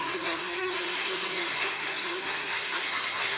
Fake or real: fake